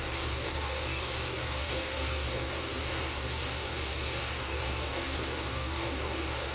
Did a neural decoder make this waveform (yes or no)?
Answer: yes